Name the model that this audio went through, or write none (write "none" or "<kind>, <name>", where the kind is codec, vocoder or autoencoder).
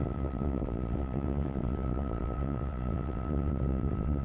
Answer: vocoder, WaveNeXt